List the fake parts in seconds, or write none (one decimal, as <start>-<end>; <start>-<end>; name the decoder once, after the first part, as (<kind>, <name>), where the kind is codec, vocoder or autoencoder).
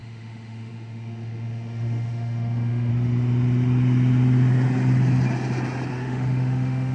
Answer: 0.0-2.9 (autoencoder, DAC-VAE); 5.9-6.9